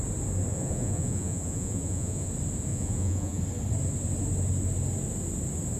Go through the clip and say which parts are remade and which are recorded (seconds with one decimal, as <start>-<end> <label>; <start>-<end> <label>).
0.0-0.5 recorded; 0.5-2.3 remade; 2.3-2.7 recorded; 2.7-3.4 remade; 3.4-5.8 recorded